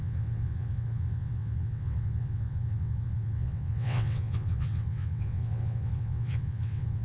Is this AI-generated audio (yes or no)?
yes